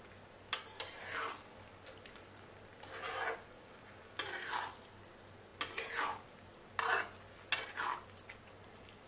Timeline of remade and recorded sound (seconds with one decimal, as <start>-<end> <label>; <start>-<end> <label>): 0.0-9.1 recorded